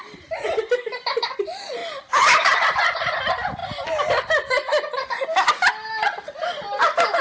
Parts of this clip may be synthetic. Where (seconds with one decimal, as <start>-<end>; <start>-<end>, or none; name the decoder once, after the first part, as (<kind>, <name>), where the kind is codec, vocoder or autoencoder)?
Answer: 1.8-2.6 (vocoder, BigVGAN v2)